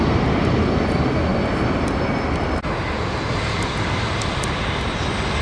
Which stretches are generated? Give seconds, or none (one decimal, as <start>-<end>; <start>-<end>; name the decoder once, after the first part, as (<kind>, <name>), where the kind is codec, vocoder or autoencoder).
none